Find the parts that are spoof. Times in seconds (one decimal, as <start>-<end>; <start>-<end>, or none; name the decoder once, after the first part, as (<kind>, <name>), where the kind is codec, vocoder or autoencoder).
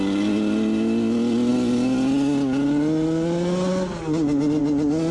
none